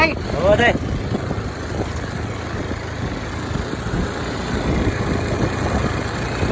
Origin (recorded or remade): recorded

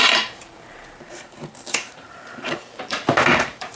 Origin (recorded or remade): remade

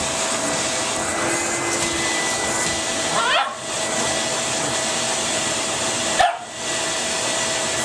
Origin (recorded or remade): recorded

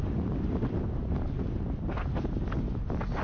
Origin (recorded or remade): remade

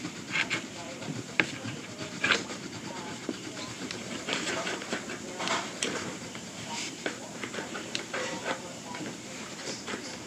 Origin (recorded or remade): remade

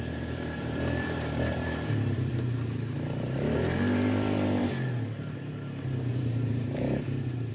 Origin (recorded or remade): remade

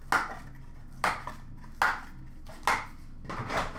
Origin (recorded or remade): recorded